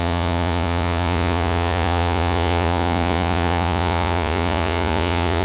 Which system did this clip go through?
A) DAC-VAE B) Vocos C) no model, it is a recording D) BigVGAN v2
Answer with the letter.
B